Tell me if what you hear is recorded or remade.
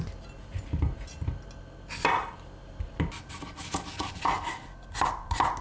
recorded